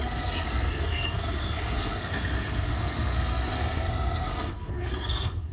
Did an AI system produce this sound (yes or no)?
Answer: yes